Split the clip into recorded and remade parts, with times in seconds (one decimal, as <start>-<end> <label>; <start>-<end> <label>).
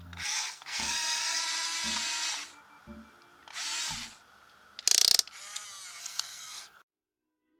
0.0-1.4 remade; 1.4-6.0 recorded; 6.0-7.6 remade